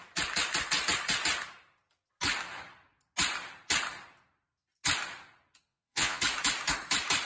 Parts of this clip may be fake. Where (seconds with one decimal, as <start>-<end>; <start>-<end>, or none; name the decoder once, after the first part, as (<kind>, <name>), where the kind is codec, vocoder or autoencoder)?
5.7-6.2 (vocoder, Vocos)